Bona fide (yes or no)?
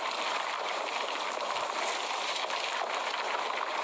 yes